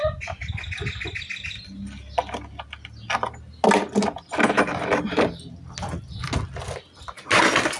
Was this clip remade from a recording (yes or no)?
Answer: no